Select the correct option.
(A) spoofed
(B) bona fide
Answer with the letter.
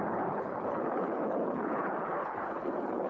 A